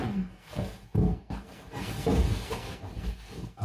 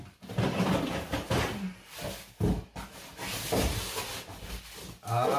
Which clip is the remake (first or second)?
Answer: first